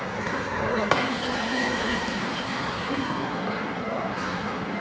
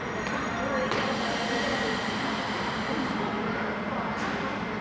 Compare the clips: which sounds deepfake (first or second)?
first